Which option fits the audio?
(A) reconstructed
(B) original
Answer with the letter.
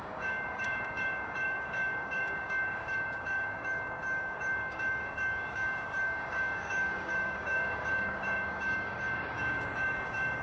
A